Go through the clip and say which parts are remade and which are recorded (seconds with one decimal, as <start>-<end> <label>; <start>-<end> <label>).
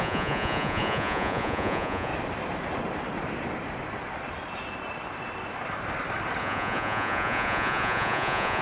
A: 0.0-2.1 remade; 2.1-6.4 recorded; 6.4-8.6 remade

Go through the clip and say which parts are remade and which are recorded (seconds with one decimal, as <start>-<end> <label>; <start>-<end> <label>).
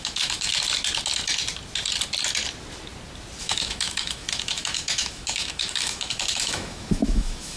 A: 0.0-0.5 remade; 0.5-3.4 recorded; 3.4-7.6 remade